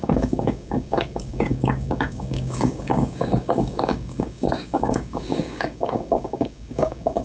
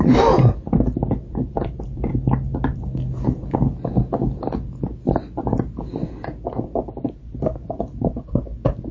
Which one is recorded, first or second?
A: second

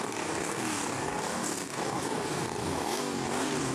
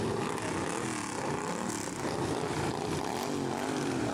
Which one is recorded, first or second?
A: second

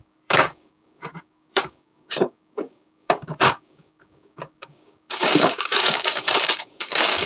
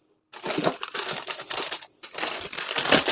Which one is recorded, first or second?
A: second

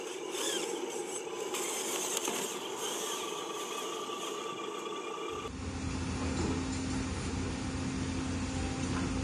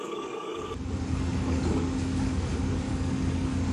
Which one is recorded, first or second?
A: first